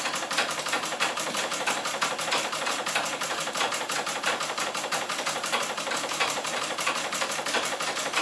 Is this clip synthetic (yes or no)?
yes